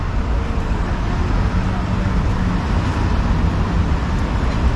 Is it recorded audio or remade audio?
recorded